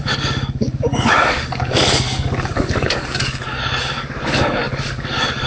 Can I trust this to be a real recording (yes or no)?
no